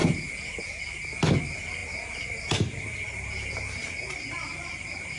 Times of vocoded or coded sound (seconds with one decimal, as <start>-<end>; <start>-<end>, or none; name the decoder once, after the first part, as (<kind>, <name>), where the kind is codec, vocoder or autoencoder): 1.8-5.2 (vocoder, BigVGAN v2)